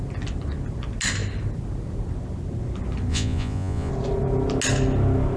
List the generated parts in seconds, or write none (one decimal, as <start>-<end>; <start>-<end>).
3.1-3.9